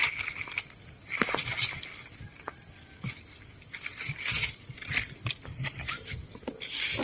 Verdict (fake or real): real